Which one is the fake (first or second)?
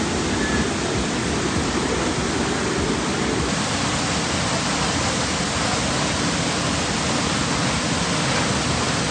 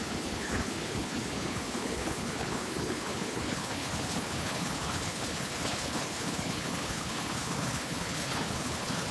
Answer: second